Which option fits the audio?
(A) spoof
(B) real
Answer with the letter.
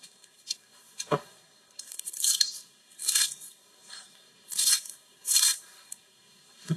A